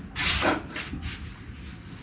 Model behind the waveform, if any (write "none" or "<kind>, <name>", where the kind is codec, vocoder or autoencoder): none